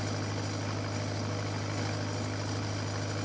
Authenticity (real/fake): real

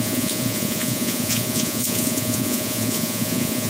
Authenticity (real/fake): fake